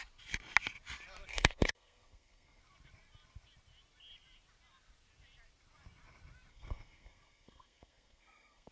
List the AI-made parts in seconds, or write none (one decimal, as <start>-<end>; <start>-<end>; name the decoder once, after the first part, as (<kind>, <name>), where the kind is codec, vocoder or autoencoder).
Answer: 1.3-2.6 (codec, SNAC); 6.5-8.7